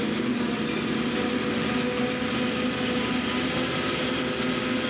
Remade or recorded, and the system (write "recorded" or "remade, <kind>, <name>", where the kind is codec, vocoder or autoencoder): recorded